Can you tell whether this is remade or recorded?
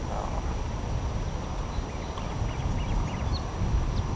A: recorded